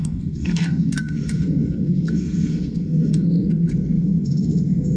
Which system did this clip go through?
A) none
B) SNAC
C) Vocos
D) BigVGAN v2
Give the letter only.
B